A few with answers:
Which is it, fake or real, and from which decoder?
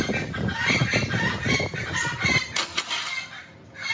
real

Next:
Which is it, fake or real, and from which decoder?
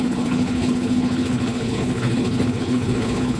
fake, codec, HILCodec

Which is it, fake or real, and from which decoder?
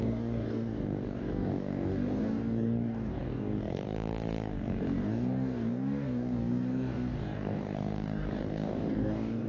fake, codec, DAC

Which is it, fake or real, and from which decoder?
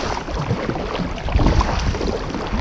real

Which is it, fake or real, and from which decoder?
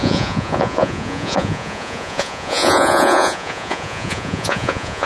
fake, vocoder, Vocos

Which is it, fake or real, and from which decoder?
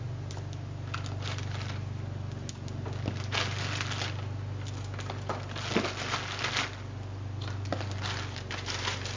real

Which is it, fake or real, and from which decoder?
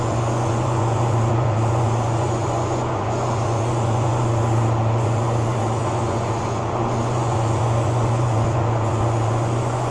fake, vocoder, Vocos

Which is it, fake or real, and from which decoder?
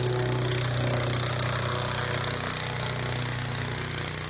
real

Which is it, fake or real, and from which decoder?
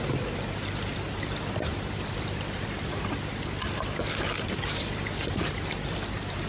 fake, vocoder, BigVGAN v2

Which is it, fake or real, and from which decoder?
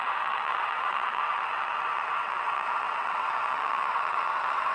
fake, vocoder, WaveNeXt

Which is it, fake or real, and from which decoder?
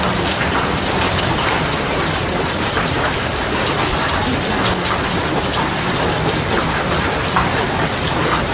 real